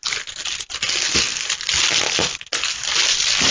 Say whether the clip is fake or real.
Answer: real